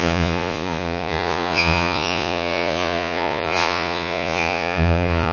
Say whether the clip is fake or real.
fake